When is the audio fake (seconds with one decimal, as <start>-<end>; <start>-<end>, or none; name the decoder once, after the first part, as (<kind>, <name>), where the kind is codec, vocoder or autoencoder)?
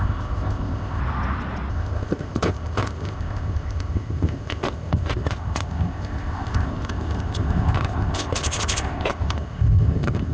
0.0-1.0 (codec, ZipCodec); 1.7-10.3